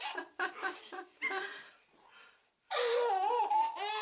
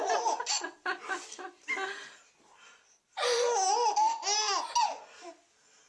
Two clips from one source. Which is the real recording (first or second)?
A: second